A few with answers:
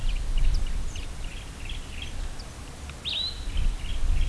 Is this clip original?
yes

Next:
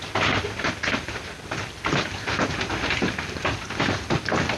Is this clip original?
yes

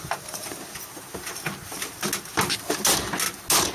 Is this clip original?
yes